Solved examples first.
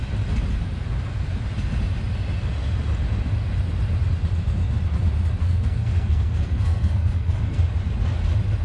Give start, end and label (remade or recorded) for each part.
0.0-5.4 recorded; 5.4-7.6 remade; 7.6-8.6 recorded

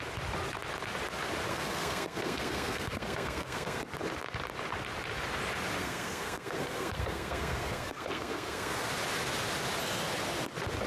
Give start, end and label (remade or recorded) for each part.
0.0-1.5 recorded; 1.5-3.8 remade; 3.8-5.8 recorded; 5.8-8.9 remade; 8.9-10.9 recorded

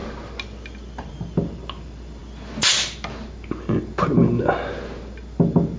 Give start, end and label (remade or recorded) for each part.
0.0-5.8 recorded

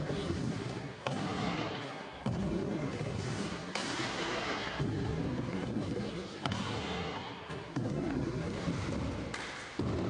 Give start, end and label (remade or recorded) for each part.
0.0-8.7 remade; 8.7-10.1 recorded

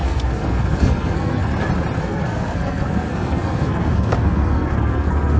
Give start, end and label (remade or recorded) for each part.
0.0-1.5 remade; 1.5-2.0 recorded; 2.0-5.4 remade